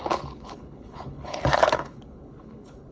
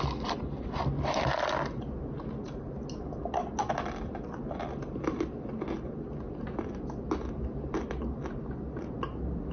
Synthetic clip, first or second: first